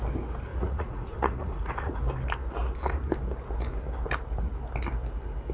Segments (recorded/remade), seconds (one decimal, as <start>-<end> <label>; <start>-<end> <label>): 0.0-0.5 recorded; 0.5-2.0 remade; 2.0-5.5 recorded